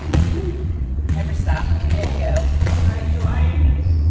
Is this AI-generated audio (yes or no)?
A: yes